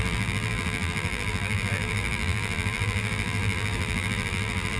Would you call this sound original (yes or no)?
no